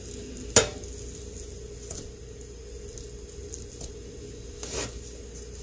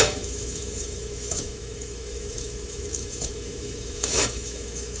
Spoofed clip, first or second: second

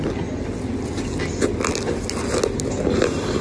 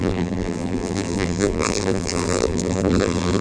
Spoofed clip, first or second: second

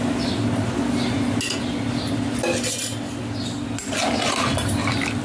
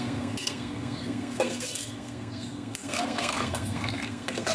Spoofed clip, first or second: second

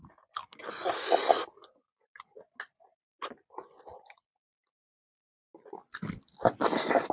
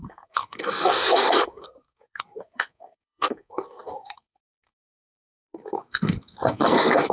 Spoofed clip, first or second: second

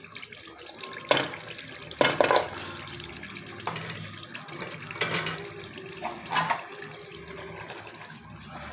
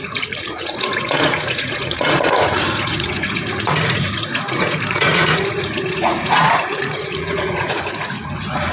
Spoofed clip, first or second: second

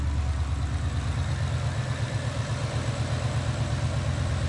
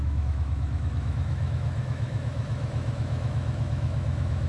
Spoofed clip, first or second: second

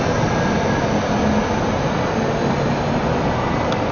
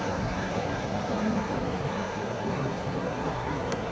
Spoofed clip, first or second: second